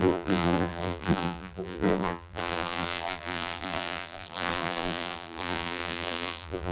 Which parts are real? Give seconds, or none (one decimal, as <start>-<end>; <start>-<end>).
none

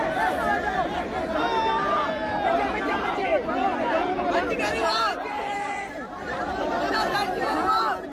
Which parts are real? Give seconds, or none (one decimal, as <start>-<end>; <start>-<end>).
0.0-5.2; 7.3-8.1

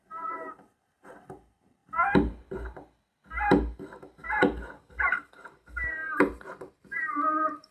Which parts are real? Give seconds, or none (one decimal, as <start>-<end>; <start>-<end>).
1.8-5.0

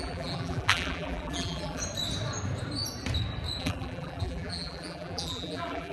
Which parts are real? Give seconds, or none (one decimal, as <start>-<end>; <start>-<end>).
1.8-3.6

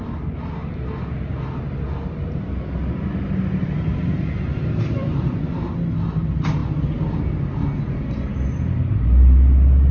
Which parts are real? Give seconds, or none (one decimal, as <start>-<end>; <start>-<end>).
0.0-4.5; 5.7-9.9

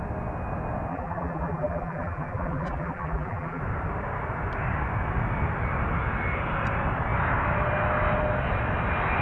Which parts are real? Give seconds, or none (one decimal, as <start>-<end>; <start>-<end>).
0.0-0.9; 3.6-9.2